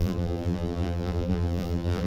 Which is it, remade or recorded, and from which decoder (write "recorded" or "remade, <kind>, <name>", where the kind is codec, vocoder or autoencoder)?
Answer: remade, vocoder, BigVGAN v2